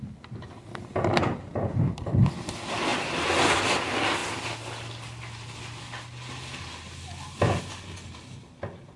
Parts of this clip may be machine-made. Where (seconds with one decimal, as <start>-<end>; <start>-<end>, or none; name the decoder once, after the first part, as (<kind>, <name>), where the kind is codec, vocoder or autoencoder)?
1.1-2.0 (vocoder, BigVGAN v2); 2.9-3.6